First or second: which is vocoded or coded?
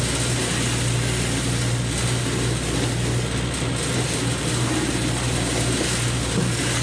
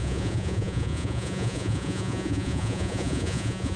second